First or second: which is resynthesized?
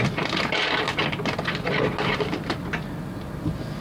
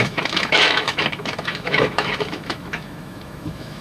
second